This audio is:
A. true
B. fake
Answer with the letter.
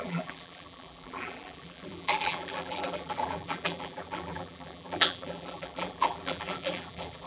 B